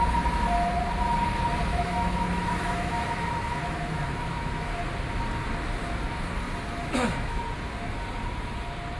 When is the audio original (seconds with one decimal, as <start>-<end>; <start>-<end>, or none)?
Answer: 0.0-1.7; 4.8-6.8; 7.4-9.0

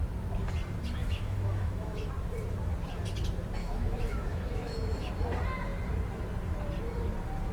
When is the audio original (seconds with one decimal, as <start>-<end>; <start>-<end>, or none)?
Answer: 0.0-1.0; 2.1-3.6; 5.1-7.5

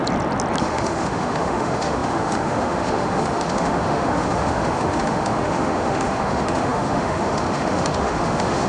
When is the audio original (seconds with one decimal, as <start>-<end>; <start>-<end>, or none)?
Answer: 0.0-0.6

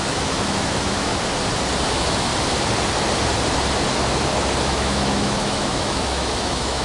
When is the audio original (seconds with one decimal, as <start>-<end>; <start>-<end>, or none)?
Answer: 1.1-1.9; 2.3-4.6

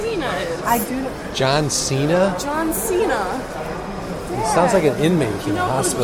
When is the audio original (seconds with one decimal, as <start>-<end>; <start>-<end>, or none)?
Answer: 0.6-6.0

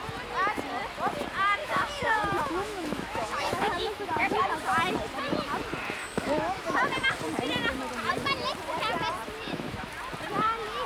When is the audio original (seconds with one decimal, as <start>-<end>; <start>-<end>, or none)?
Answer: 0.0-1.6; 4.5-6.0; 6.9-9.4; 9.9-10.9

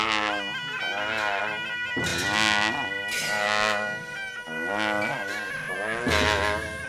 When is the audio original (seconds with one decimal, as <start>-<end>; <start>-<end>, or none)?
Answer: 0.0-6.9